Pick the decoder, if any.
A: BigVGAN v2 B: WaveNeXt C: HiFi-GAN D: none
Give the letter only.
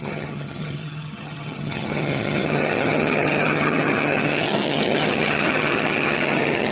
C